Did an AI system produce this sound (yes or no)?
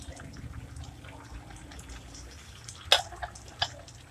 no